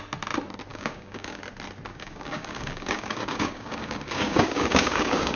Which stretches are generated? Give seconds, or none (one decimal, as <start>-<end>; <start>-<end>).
0.7-1.4; 1.9-5.4

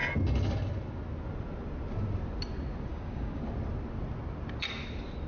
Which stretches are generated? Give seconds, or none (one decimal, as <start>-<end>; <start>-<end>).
2.9-3.4

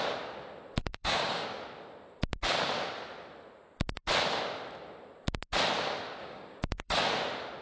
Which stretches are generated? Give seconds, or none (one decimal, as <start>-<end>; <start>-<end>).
0.8-1.6; 6.2-7.0